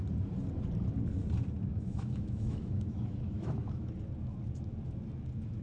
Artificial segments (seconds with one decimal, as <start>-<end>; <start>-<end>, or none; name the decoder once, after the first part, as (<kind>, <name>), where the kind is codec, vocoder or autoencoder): 1.7-3.9 (autoencoder, DAC-VAE)